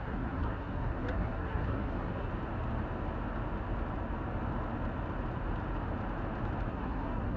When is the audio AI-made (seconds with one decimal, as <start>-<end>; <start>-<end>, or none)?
0.0-2.3; 6.7-7.4